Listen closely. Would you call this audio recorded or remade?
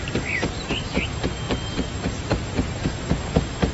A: recorded